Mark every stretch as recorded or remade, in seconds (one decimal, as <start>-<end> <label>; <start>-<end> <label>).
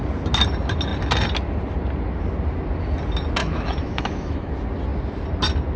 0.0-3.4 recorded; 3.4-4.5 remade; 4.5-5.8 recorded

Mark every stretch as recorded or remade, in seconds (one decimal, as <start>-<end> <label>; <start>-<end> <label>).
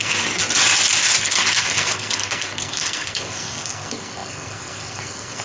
0.0-0.4 remade; 0.4-1.2 recorded; 1.2-5.4 remade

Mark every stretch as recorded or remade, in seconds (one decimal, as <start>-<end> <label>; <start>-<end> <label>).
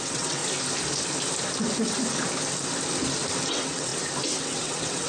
0.0-0.4 remade; 0.4-3.5 recorded; 3.5-3.9 remade; 3.9-4.4 recorded; 4.4-5.1 remade